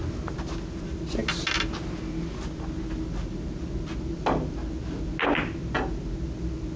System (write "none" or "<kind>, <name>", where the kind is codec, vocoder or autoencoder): none